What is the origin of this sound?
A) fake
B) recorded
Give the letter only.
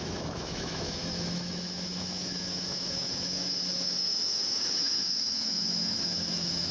A